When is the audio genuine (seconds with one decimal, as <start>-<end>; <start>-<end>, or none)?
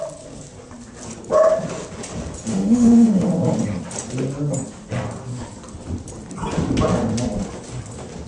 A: 0.0-2.5; 3.3-8.3